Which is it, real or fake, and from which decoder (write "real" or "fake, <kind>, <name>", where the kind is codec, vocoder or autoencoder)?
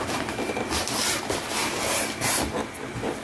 real